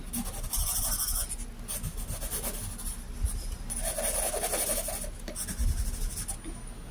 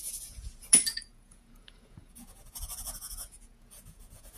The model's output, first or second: second